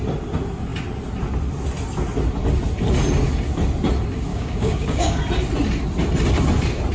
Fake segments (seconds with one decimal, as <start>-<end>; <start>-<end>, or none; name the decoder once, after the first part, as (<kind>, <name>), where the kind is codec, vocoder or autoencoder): 4.3-5.2 (codec, DAC)